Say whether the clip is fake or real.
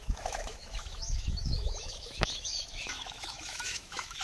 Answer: fake